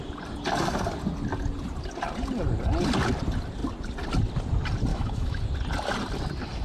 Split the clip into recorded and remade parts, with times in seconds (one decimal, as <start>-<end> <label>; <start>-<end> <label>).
0.0-4.9 recorded; 4.9-5.4 remade; 5.4-6.6 recorded